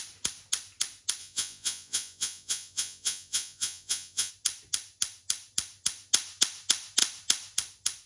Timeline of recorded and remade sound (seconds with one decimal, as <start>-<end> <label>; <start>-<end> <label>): 0.0-1.2 recorded; 1.2-4.3 remade; 4.3-8.1 recorded